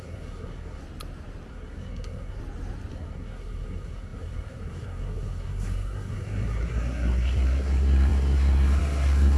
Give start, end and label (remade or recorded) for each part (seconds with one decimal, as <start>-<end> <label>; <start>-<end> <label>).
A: 0.0-0.8 remade; 0.8-1.5 recorded; 1.5-2.4 remade; 2.4-2.9 recorded; 2.9-9.4 remade